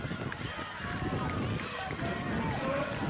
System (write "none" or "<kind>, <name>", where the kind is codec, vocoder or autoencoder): none